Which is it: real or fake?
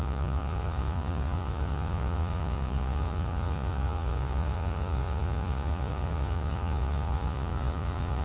fake